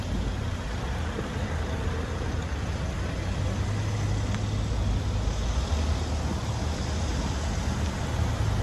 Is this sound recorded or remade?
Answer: recorded